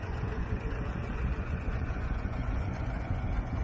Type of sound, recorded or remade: remade